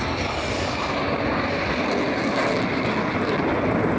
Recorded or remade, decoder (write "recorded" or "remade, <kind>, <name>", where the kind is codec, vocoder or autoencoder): recorded